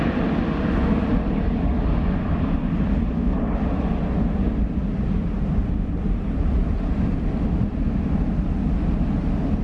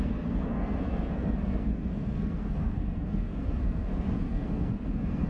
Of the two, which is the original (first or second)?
first